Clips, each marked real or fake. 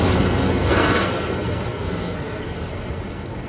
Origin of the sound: fake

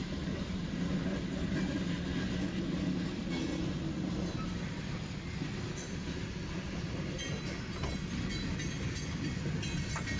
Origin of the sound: real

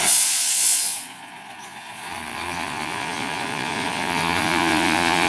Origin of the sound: fake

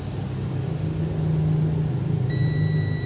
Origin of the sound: real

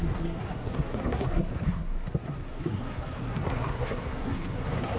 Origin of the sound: fake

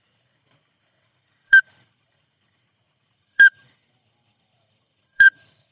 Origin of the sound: fake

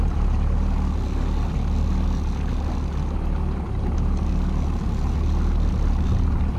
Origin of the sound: real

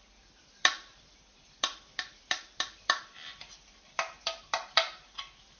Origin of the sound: fake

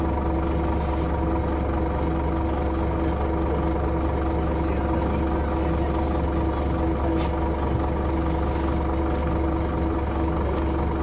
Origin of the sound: real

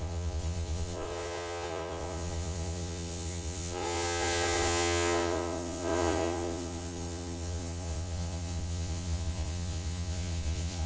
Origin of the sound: fake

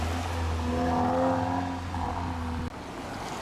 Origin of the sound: real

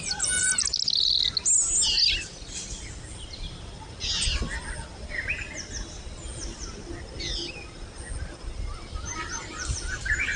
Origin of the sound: real